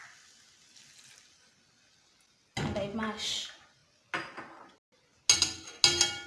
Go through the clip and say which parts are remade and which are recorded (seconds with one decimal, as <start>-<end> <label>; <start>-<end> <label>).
0.0-6.3 recorded